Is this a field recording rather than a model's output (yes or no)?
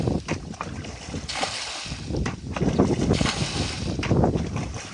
yes